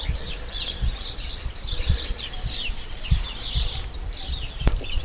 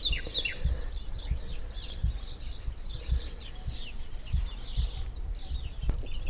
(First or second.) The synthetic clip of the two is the first